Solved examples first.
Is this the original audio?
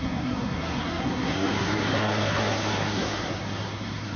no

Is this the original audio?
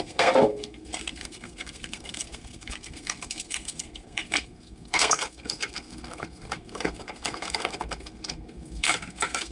no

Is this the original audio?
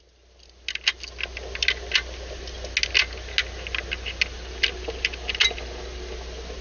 yes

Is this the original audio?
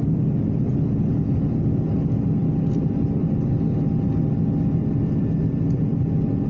yes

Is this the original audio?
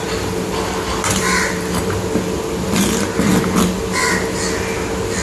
yes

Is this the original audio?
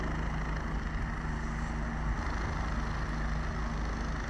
yes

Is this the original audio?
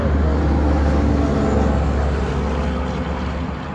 yes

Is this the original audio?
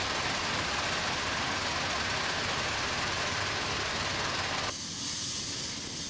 yes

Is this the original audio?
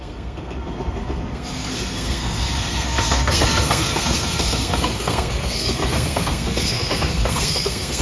no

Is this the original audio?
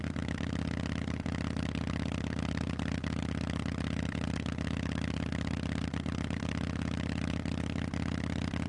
yes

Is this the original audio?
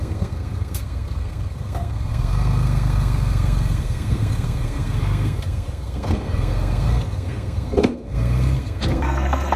no